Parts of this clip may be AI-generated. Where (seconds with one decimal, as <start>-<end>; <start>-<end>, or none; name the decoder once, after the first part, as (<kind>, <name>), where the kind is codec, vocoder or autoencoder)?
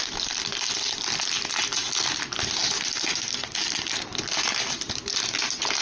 none